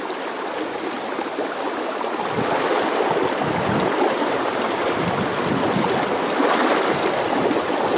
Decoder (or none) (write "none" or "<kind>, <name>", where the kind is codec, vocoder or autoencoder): none